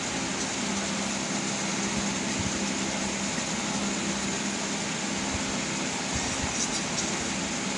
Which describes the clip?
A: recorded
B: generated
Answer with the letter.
A